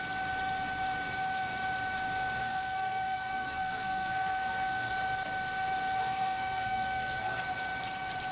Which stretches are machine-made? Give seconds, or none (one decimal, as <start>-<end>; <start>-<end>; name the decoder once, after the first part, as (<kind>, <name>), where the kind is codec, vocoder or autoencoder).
2.4-4.9 (codec, SNAC); 6.0-7.4